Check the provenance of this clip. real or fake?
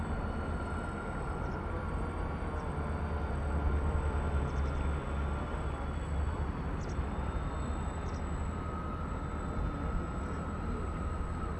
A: real